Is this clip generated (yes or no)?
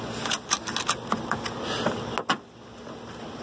no